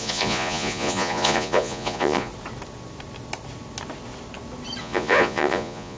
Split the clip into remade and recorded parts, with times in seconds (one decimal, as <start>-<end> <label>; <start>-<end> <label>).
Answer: 0.0-2.3 remade; 2.3-4.8 recorded; 4.8-6.0 remade